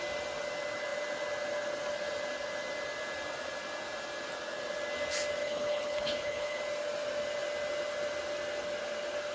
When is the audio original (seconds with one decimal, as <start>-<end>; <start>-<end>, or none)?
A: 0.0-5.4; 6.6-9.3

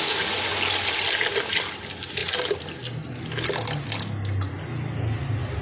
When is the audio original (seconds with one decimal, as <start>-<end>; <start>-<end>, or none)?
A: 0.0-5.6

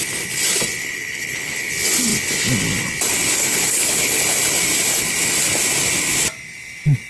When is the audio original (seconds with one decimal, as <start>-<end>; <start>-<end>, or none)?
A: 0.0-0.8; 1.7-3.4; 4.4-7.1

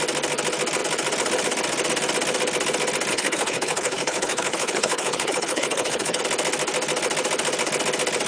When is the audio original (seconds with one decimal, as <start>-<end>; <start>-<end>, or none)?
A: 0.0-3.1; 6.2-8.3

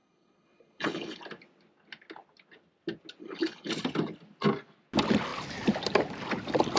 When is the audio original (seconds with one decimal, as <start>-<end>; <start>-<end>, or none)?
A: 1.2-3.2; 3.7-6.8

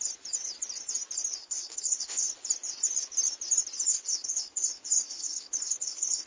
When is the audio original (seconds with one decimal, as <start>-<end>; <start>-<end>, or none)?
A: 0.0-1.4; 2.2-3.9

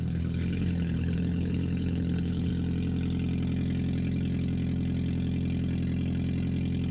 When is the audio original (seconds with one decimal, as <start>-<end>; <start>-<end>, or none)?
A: 2.5-6.9